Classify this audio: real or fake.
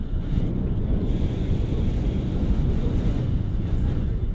fake